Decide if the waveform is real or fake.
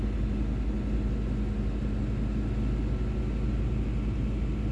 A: real